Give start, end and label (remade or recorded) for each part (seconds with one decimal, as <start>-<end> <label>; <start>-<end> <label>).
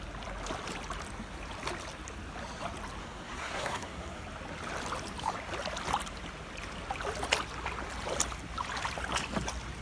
0.0-3.0 recorded; 3.0-4.2 remade; 4.2-9.8 recorded